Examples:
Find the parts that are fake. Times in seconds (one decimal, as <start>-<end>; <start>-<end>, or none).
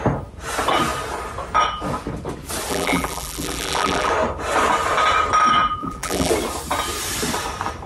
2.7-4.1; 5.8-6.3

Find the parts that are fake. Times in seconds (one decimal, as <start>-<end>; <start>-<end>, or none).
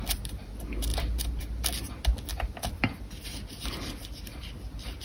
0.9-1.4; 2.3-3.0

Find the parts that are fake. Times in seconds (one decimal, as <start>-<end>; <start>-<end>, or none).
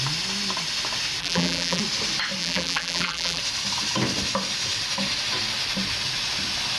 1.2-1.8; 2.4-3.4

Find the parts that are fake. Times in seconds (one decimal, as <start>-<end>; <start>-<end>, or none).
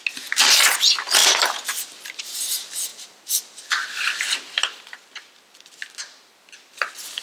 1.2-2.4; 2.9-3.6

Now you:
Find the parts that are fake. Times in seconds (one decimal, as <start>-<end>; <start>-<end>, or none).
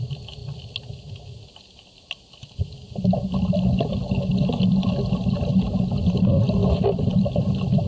6.6-7.4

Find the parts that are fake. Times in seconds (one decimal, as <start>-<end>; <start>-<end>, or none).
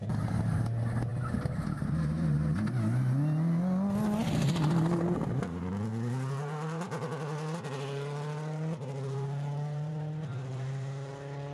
5.9-11.1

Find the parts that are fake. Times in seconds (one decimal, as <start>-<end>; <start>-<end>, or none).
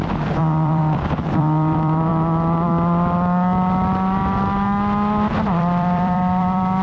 0.0-2.1; 5.6-6.8